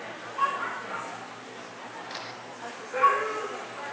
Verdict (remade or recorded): recorded